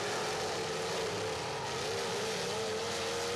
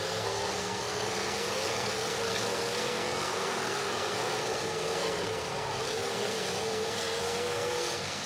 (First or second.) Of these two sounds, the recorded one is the first